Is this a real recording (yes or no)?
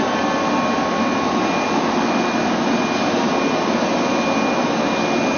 yes